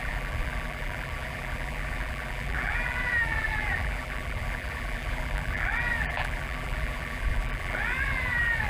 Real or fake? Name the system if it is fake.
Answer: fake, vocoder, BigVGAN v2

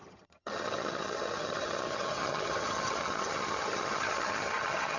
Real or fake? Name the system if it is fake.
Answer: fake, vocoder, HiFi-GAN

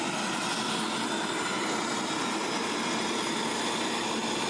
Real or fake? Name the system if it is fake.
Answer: real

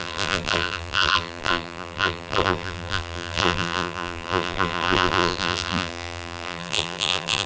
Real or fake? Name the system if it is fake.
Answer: fake, vocoder, BigVGAN v2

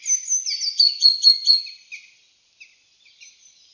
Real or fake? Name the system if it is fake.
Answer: real